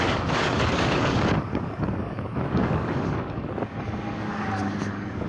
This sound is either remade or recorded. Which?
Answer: remade